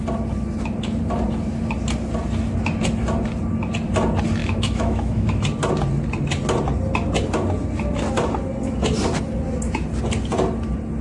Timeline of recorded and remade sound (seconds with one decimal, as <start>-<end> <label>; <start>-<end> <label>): 0.0-4.4 recorded; 4.4-5.4 remade; 5.4-11.0 recorded